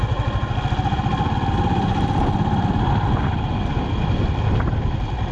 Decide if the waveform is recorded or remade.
recorded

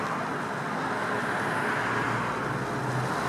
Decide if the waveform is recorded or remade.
recorded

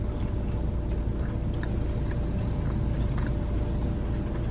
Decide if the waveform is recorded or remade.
recorded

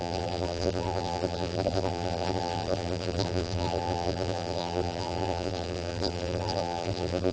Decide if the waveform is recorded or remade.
remade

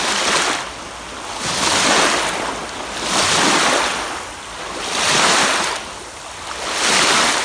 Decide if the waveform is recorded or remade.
recorded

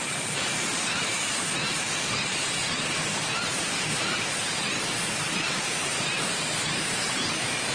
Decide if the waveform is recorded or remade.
remade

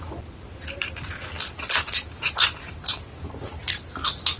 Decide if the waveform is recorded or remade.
recorded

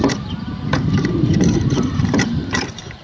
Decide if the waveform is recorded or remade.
remade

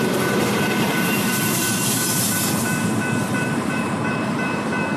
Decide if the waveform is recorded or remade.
remade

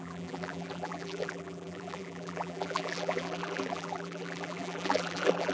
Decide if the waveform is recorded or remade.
remade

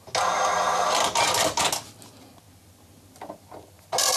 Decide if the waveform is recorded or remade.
recorded